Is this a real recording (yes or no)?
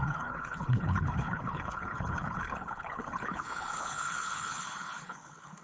no